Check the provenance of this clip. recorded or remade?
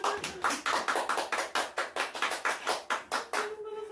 recorded